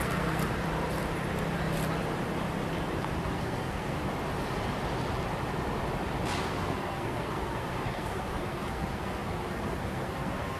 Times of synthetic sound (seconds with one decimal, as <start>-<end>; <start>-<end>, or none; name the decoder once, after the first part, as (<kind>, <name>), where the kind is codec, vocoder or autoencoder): 0.0-0.4 (codec, SNAC); 3.3-4.0; 6.4-10.6